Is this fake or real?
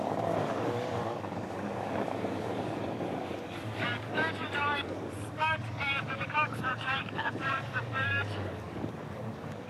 fake